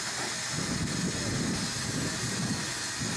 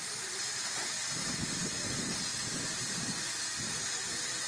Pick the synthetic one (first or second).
second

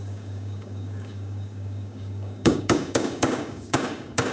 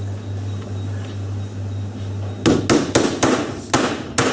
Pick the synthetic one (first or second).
first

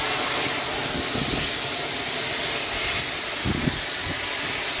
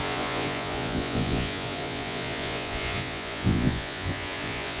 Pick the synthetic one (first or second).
second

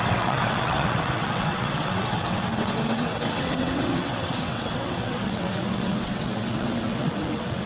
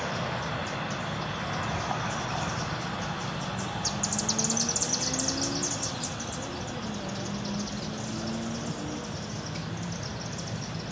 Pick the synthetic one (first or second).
first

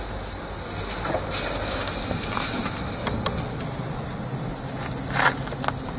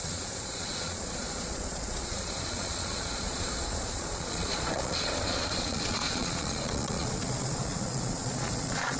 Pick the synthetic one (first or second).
second